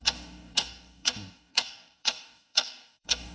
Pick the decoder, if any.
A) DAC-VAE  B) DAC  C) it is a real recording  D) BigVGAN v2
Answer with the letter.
B